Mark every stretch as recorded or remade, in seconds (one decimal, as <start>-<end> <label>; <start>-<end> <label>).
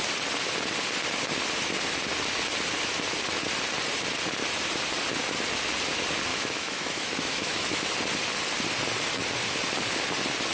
0.0-6.3 recorded; 6.3-7.8 remade; 7.8-10.5 recorded